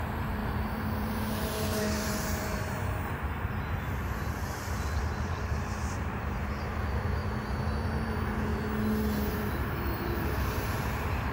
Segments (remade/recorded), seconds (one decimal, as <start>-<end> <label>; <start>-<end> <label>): 0.0-7.2 remade; 7.2-7.8 recorded; 7.8-8.5 remade; 8.5-9.3 recorded; 9.3-11.3 remade